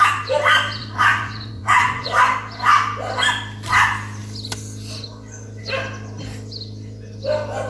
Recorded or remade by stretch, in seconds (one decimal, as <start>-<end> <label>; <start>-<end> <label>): 0.0-0.8 recorded; 0.8-2.1 remade; 2.1-7.7 recorded